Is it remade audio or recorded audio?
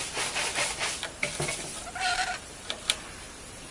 recorded